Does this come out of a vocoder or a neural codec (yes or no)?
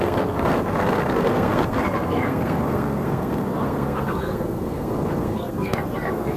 yes